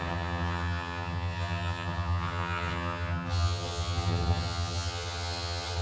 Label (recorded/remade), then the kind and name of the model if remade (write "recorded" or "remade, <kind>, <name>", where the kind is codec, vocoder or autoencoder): remade, vocoder, HiFi-GAN